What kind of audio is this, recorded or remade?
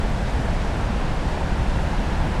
recorded